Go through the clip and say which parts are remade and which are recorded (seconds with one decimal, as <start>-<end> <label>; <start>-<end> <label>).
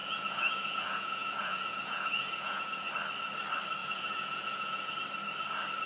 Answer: 0.0-2.9 remade; 2.9-3.8 recorded; 3.8-4.9 remade; 4.9-5.9 recorded